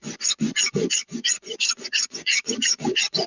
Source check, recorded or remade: remade